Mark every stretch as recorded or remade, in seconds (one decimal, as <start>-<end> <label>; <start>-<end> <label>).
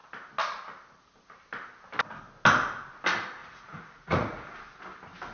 0.0-3.4 recorded; 3.4-4.8 remade; 4.8-5.3 recorded